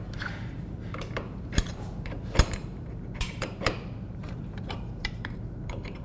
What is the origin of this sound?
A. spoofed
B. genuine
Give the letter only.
A